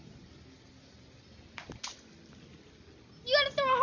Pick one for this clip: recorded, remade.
recorded